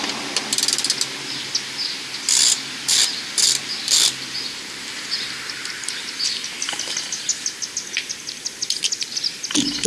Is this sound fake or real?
real